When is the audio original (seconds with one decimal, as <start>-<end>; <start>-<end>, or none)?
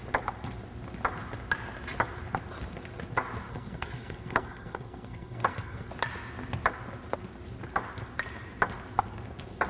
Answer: 0.0-3.5; 5.9-9.7